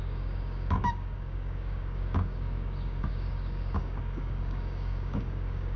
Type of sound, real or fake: fake